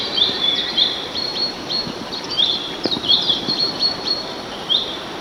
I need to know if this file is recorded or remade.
remade